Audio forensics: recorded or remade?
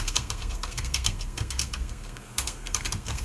remade